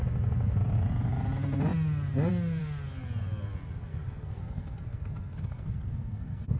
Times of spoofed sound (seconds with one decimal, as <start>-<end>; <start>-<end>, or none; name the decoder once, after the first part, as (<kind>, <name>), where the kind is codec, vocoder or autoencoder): 3.9-6.6 (codec, SNAC)